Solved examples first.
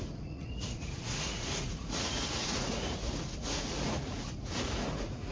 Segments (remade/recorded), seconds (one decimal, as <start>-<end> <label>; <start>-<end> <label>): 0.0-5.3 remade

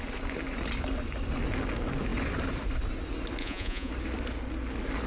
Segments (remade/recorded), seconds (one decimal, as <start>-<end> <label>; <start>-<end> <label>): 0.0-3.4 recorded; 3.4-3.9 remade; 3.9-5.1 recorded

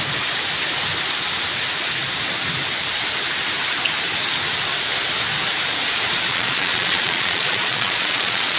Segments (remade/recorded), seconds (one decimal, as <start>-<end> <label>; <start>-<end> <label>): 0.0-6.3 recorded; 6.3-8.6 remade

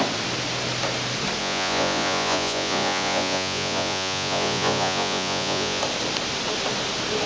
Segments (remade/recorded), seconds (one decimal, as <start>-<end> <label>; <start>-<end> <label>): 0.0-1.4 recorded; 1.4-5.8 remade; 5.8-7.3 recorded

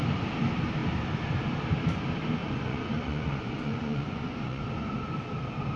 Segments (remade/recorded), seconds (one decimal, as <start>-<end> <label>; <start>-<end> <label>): 0.0-2.4 recorded; 2.4-4.6 remade; 4.6-5.8 recorded

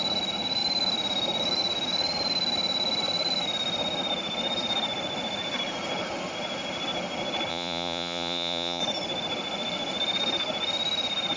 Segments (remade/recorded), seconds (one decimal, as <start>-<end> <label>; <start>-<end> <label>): 0.0-7.5 recorded; 7.5-8.8 remade; 8.8-11.4 recorded